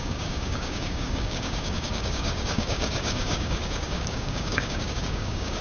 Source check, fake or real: fake